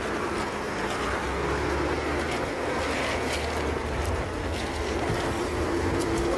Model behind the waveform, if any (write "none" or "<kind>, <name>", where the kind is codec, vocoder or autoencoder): none